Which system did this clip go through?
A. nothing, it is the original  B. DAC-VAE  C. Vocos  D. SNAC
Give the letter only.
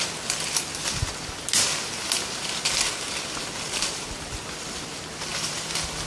A